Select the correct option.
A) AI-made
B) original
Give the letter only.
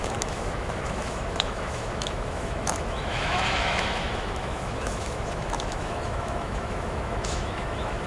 A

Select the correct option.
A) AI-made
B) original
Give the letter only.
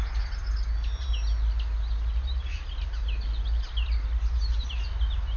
B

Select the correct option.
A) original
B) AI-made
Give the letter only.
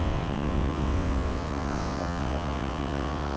B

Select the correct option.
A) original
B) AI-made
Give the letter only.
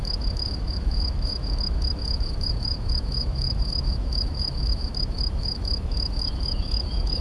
B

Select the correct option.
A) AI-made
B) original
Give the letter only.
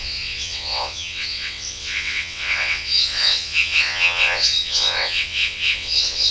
A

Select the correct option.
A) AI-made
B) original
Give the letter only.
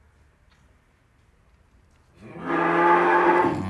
B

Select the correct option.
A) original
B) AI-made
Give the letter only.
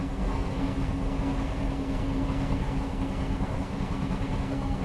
B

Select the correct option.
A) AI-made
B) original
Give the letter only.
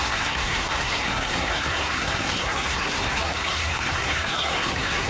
A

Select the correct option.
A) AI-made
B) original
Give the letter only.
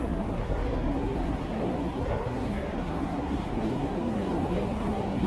A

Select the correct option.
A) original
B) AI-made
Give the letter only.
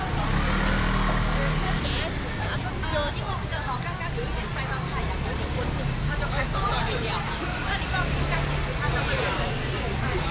A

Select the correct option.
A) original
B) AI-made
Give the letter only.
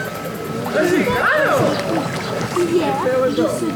A